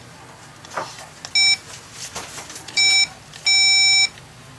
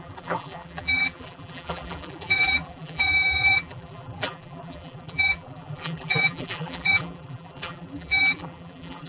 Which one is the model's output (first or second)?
second